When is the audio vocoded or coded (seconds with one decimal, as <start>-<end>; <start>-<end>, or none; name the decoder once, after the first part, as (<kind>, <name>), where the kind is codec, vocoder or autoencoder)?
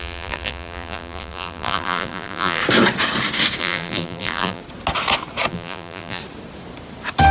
0.0-2.6 (vocoder, BigVGAN v2); 3.6-4.6; 5.5-6.2